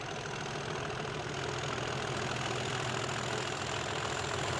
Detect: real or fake fake